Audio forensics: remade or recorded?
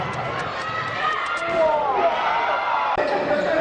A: recorded